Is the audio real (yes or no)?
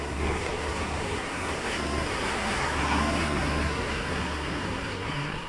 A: no